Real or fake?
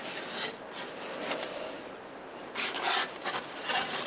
real